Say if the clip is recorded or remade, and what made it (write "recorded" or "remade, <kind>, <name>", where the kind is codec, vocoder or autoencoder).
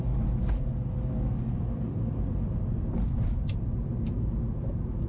recorded